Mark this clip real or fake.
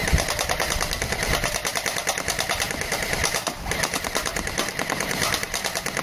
real